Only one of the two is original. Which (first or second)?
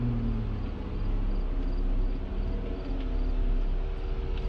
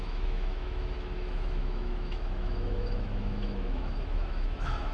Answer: first